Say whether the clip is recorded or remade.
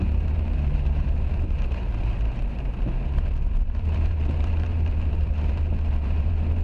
remade